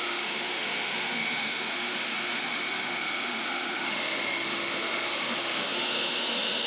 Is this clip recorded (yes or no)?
no